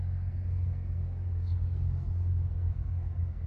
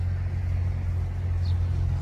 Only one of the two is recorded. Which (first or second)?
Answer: second